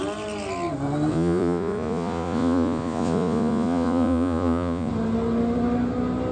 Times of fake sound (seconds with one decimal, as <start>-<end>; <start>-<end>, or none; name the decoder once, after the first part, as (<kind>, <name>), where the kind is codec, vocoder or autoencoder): 1.1-4.9 (vocoder, Vocos)